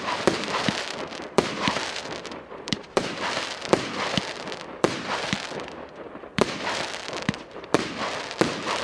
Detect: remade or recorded remade